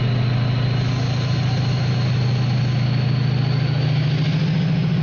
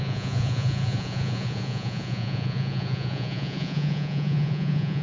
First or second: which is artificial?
second